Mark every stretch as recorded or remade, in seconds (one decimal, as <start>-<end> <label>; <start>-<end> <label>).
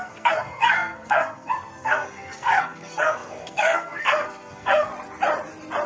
0.0-4.9 remade; 4.9-5.9 recorded